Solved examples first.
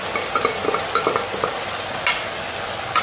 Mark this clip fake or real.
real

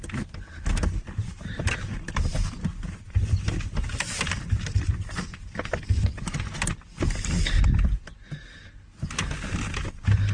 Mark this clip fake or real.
real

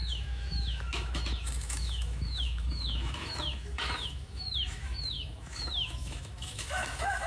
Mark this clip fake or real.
fake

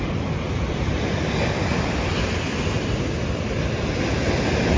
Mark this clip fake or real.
real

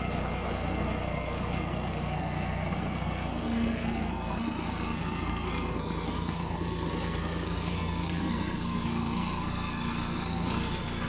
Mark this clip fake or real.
fake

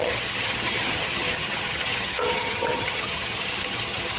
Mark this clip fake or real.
fake